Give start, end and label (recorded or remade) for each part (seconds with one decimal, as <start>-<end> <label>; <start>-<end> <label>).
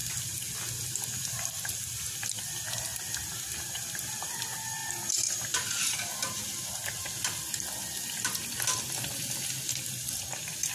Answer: 0.0-10.7 recorded